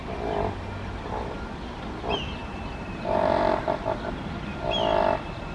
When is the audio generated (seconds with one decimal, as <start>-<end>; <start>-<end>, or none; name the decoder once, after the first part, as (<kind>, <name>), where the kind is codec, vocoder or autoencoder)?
2.4-3.6 (vocoder, BigVGAN v2)